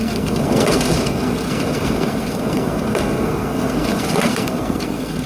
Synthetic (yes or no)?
yes